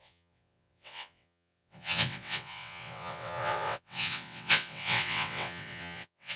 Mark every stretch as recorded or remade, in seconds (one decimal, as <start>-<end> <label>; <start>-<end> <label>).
0.0-6.4 remade